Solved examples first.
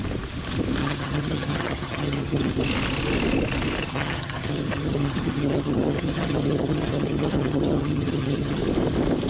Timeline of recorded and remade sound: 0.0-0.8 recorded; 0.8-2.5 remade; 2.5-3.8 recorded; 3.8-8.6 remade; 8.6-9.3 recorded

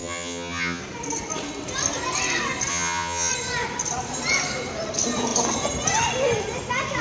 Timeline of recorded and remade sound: 0.0-0.8 remade; 0.8-2.7 recorded; 2.7-3.3 remade; 3.3-7.0 recorded